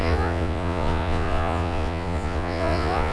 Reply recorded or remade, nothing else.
remade